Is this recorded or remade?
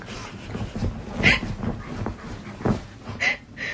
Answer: recorded